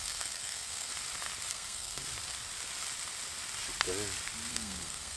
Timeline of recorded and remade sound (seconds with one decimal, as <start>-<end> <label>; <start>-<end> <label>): 0.0-0.9 remade; 0.9-1.5 recorded; 1.5-2.0 remade; 2.0-4.5 recorded; 4.5-5.2 remade